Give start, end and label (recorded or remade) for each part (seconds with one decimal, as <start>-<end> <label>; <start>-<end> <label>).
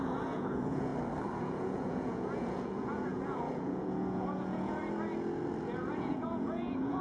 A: 0.0-0.9 remade; 0.9-1.4 recorded; 1.4-4.8 remade; 4.8-5.6 recorded; 5.6-7.0 remade